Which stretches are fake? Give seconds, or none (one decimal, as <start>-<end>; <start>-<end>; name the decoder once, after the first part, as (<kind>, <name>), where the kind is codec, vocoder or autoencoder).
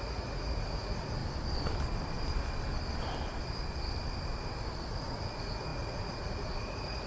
0.0-1.2 (vocoder, Vocos); 4.9-7.1